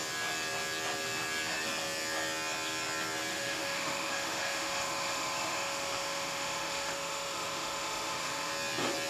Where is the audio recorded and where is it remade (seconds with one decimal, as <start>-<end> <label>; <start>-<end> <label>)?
0.0-3.3 recorded; 3.3-8.5 remade; 8.5-9.1 recorded